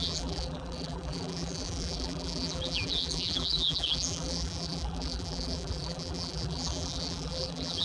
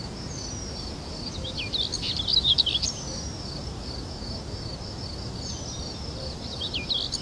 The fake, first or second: first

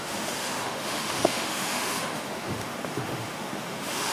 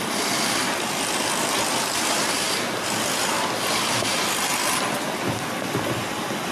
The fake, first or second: first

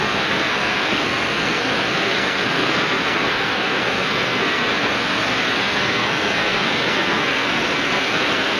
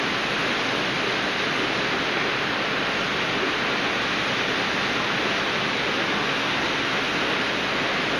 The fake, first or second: first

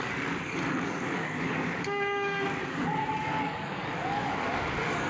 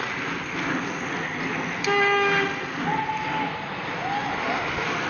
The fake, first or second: first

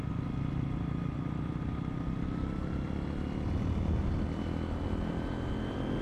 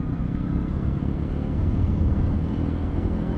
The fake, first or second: second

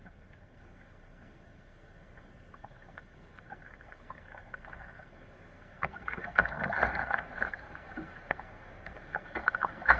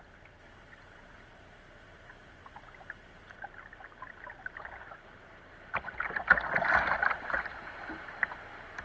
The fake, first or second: first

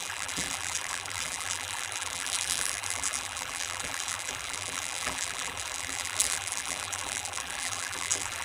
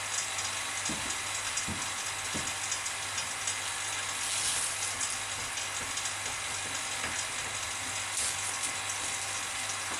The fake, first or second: first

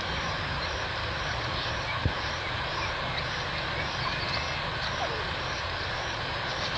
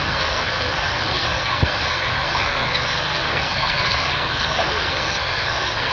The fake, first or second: second